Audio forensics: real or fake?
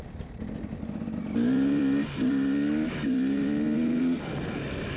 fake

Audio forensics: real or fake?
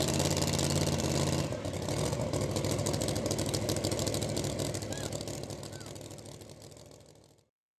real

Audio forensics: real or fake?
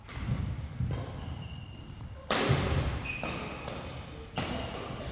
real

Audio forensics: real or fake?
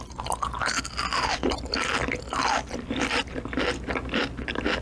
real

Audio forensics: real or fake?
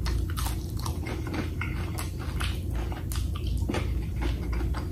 real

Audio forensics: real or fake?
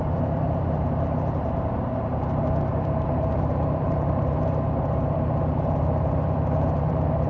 fake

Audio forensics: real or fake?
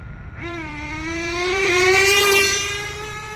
fake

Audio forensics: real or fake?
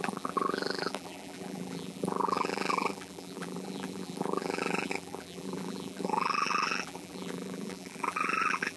fake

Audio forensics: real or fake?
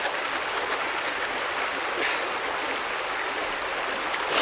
fake